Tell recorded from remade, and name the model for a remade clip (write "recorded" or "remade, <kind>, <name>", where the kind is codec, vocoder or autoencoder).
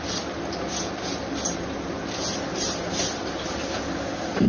recorded